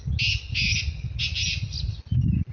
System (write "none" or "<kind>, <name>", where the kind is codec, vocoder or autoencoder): none